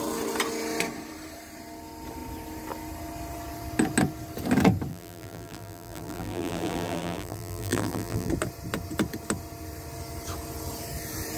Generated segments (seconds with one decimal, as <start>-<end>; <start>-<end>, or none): 4.9-8.3